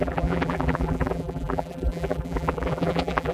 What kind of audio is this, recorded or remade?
remade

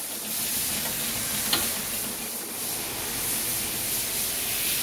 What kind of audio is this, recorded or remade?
recorded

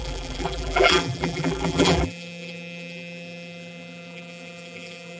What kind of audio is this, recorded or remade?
remade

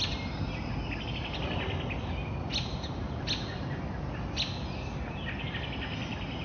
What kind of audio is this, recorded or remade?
recorded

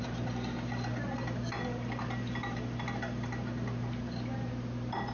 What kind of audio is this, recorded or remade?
recorded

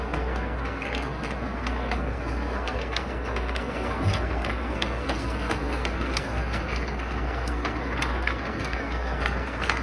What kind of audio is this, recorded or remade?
remade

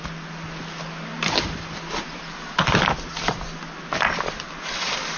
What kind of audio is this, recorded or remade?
recorded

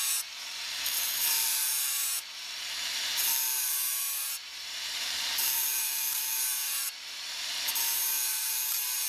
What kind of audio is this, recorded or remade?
remade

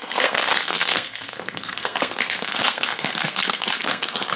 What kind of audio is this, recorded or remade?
remade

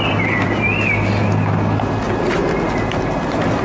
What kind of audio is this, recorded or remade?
recorded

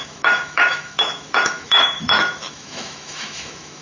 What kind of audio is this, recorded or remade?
remade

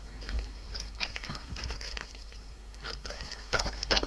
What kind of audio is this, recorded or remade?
remade